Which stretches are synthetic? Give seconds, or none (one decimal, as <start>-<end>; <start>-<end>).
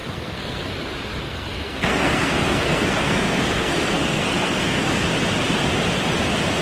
0.0-0.7; 1.2-5.0